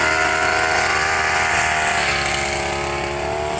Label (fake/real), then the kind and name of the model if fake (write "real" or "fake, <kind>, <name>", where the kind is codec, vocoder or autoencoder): real